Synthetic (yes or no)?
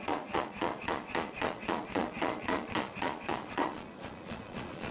yes